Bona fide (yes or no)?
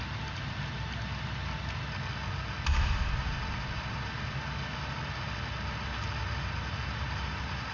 yes